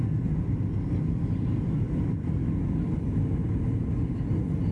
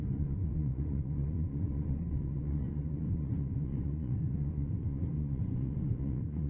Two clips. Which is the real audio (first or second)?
first